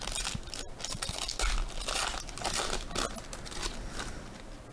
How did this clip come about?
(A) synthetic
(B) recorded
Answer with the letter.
B